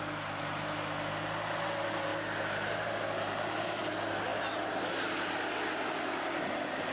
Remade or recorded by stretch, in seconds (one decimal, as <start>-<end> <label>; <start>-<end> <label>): 0.0-6.9 recorded